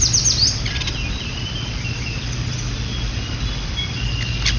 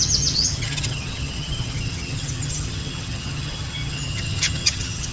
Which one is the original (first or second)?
first